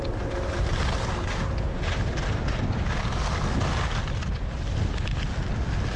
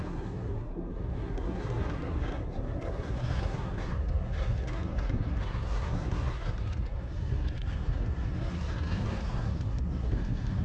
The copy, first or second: second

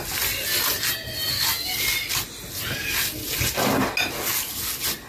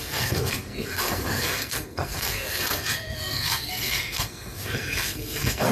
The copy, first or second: second